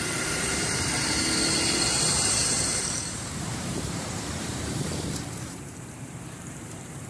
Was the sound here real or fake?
fake